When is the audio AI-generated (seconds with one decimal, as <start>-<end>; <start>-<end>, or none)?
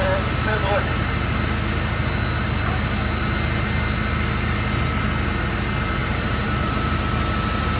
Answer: 6.0-7.0